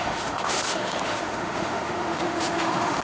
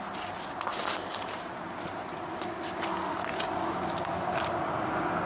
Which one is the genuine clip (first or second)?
second